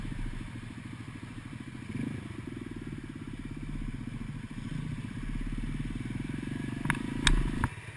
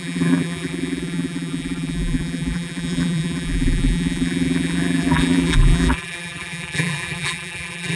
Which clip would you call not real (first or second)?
second